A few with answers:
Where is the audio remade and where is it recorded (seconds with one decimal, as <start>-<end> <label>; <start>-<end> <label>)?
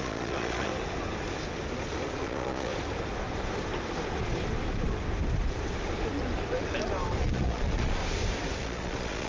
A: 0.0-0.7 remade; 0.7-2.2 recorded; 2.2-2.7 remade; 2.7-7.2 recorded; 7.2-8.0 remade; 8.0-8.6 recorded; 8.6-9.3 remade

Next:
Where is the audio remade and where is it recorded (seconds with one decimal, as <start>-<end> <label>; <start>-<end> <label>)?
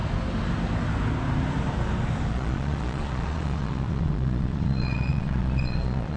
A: 0.0-2.3 recorded; 2.3-6.2 remade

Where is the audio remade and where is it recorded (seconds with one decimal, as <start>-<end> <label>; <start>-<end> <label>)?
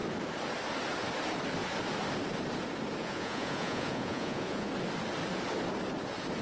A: 0.0-3.0 recorded; 3.0-4.7 remade; 4.7-6.4 recorded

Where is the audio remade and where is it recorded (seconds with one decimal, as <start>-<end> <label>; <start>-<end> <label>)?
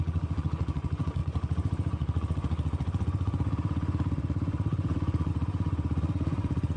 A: 0.0-6.8 remade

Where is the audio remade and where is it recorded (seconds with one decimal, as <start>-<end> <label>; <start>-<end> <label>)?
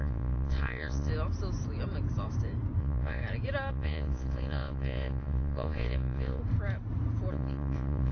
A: 0.0-1.1 remade; 1.1-2.8 recorded; 2.8-3.2 remade; 3.2-3.7 recorded; 3.7-6.4 remade; 6.4-7.3 recorded; 7.3-8.1 remade